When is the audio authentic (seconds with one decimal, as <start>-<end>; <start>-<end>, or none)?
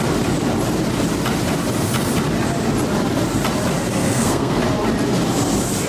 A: 0.0-4.0; 4.6-5.9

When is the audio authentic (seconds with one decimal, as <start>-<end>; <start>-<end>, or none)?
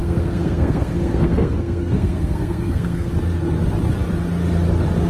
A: 3.1-5.1